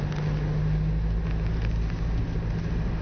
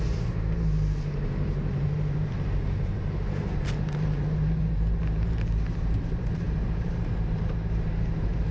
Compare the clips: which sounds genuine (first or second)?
first